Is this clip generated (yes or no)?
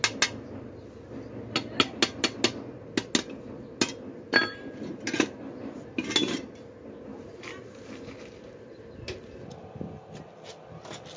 no